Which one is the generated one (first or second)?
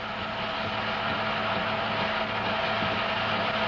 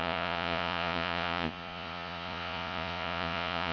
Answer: second